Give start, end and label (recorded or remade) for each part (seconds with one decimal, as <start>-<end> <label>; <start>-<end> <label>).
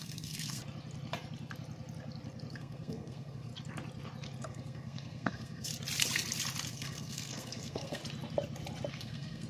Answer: 0.0-0.6 remade; 0.6-2.5 recorded; 2.5-3.5 remade; 3.5-4.4 recorded; 4.4-5.7 remade; 5.7-6.7 recorded; 6.7-8.0 remade; 8.0-8.9 recorded; 8.9-9.5 remade